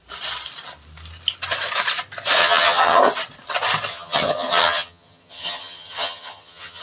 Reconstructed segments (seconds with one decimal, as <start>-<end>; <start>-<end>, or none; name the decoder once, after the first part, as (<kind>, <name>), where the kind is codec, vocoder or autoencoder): 2.4-3.0 (vocoder, HiFi-GAN); 3.9-6.8